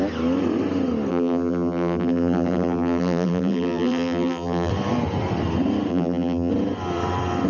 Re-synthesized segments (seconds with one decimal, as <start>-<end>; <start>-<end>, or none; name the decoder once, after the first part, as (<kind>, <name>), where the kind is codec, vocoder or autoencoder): 1.1-4.7 (vocoder, BigVGAN v2); 5.9-6.5